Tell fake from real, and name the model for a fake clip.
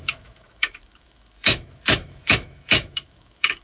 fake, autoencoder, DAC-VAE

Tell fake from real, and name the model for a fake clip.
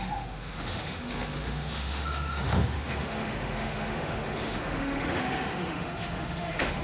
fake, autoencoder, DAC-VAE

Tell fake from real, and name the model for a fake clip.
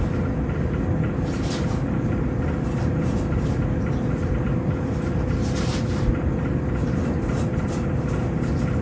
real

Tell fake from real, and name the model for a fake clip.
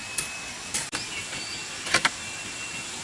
real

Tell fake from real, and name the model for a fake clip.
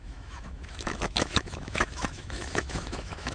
fake, autoencoder, DAC-VAE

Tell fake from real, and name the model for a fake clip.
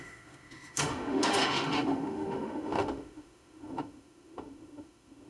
fake, autoencoder, DAC-VAE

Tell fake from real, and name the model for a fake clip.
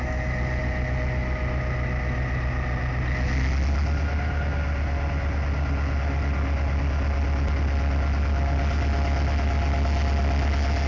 real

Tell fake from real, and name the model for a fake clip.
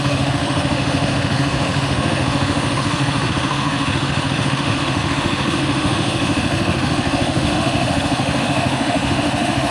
fake, autoencoder, DAC-VAE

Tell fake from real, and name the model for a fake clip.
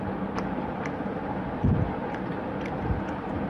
real